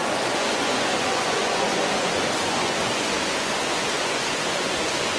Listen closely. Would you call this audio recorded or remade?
remade